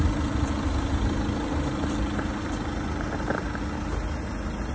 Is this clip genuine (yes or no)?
yes